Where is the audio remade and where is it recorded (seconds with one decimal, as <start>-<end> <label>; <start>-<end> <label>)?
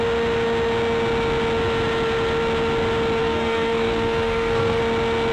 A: 0.0-3.2 recorded; 3.2-4.8 remade; 4.8-5.3 recorded